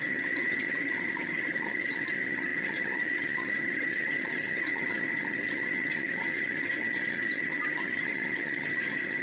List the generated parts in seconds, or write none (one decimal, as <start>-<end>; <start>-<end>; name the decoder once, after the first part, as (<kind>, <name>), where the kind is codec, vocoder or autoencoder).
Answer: 0.0-9.2 (vocoder, HiFi-GAN)